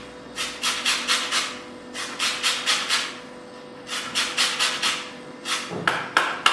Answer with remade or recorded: recorded